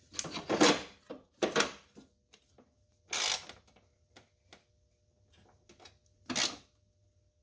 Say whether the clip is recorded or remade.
recorded